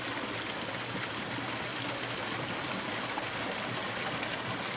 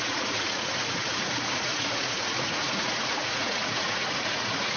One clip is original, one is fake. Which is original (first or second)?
first